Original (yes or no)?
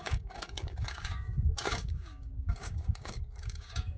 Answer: no